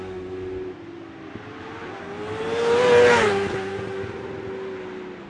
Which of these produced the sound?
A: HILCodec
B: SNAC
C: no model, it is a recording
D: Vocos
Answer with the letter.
C